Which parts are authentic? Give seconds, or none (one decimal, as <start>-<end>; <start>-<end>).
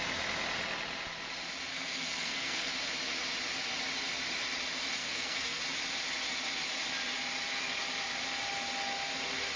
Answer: 0.0-1.7; 2.7-5.0; 5.6-9.6